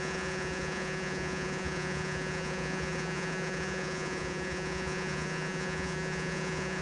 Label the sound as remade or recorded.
remade